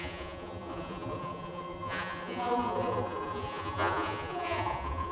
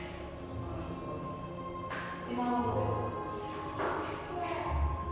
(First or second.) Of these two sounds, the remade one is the first